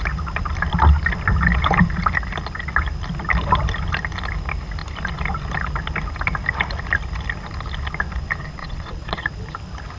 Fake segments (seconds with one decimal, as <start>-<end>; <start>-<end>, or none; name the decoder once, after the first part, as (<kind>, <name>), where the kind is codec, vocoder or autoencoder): 8.6-9.3 (vocoder, Vocos)